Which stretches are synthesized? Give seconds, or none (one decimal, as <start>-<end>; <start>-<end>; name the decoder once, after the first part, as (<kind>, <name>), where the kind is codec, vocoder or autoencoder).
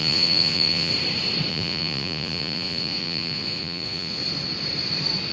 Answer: 0.0-0.9 (vocoder, Vocos); 1.5-4.2